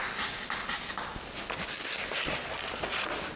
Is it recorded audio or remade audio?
recorded